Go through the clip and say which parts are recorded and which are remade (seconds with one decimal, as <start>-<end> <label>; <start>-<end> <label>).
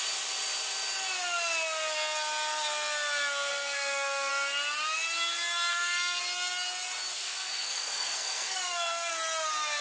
0.0-3.5 recorded; 3.5-4.3 remade; 4.3-5.7 recorded; 5.7-6.2 remade; 6.2-7.1 recorded; 7.1-9.1 remade; 9.1-9.8 recorded